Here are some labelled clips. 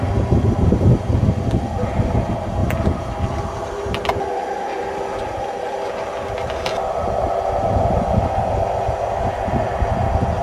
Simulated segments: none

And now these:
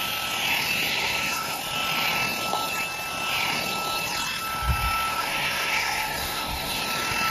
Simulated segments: 0.9-1.6; 5.1-6.8

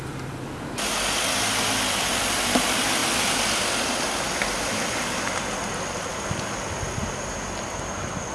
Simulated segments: none

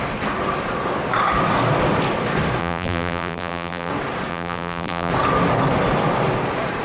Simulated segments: 2.6-3.9; 4.3-5.1

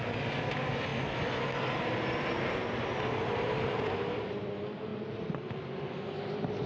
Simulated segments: 0.9-4.5; 4.9-5.5

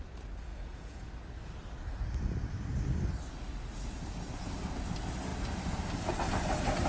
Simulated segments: 0.5-1.1

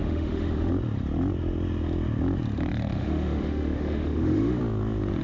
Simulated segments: 0.0-0.7; 2.8-4.6